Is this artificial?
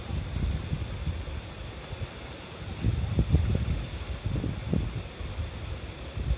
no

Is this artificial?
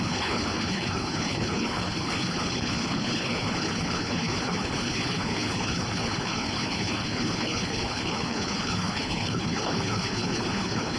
yes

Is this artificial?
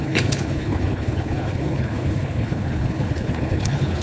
yes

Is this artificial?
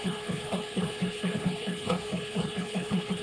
yes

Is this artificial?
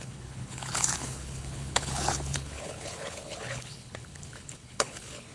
yes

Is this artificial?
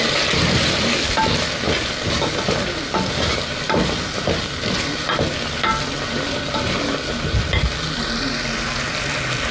no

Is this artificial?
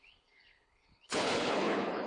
yes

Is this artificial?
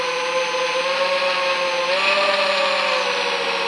no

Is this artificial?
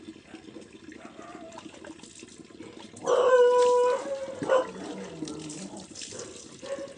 no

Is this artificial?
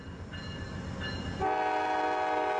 no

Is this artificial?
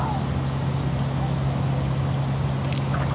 no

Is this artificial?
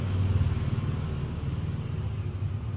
no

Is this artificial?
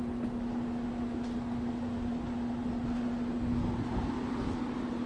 no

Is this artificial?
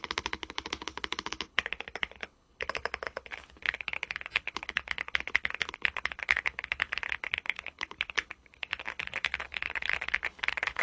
yes